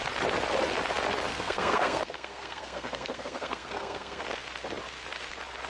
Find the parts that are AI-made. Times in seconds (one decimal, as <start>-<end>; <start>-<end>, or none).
1.3-4.2